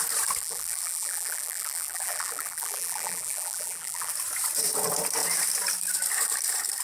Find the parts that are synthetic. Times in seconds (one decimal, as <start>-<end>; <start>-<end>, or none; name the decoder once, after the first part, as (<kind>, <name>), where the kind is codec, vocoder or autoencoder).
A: 0.4-4.1 (vocoder, BigVGAN v2)